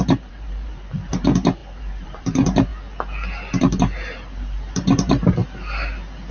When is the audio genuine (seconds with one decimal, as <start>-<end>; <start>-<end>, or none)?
2.7-3.6; 5.4-6.3